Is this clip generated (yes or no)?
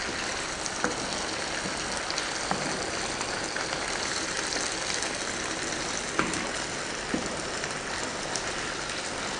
no